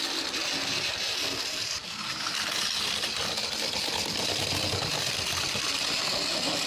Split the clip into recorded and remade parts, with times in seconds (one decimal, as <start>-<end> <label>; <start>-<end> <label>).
0.0-6.7 recorded